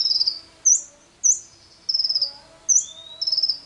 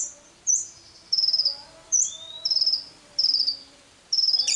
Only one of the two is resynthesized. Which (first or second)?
second